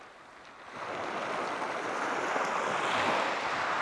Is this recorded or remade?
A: recorded